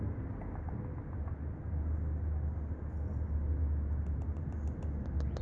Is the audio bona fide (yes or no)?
yes